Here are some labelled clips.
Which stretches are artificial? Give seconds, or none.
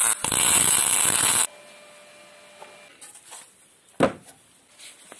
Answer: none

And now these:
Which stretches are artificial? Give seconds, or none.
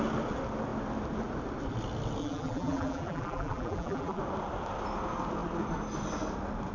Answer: 2.2-4.2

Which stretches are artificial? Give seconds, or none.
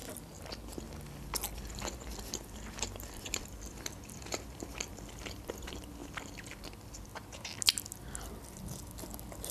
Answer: none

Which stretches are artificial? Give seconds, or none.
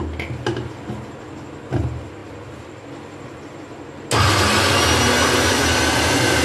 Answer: none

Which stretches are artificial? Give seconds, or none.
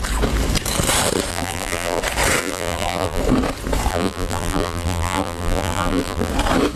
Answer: 1.3-2.0; 2.4-3.2; 3.9-6.3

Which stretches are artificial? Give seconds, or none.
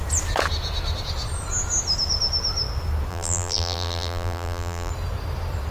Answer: 3.1-4.9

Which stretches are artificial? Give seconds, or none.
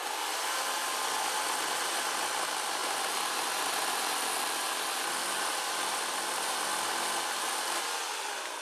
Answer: none